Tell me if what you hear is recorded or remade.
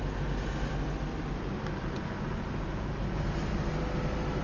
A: recorded